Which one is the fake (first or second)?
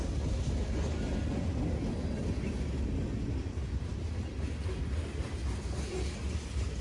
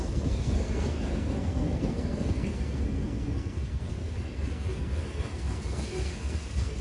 second